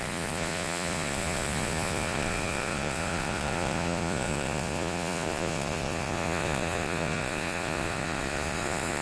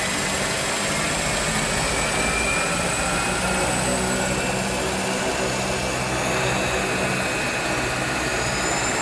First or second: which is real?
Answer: second